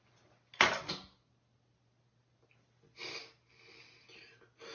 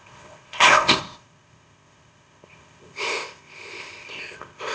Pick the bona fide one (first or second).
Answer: first